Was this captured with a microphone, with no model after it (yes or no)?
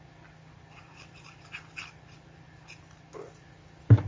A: yes